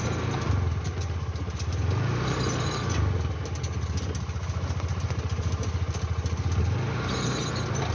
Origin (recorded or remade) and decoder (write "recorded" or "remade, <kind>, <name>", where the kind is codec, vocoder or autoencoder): recorded